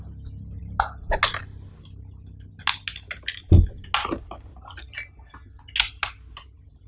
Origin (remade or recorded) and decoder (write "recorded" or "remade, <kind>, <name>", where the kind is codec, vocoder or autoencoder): recorded